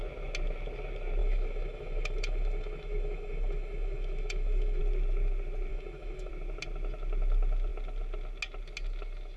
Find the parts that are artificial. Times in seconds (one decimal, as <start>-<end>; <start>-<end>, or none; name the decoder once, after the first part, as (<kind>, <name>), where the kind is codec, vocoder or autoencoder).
1.2-4.8 (autoencoder, DAC-VAE); 5.7-6.3